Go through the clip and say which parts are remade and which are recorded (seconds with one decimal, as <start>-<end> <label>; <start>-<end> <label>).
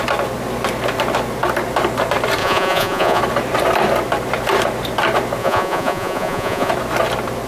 0.0-2.4 recorded; 2.4-3.2 remade; 3.2-5.4 recorded; 5.4-6.7 remade; 6.7-7.5 recorded